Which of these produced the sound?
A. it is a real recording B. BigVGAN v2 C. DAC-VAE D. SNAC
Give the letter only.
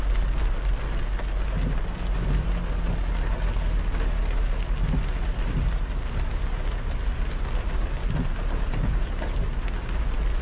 A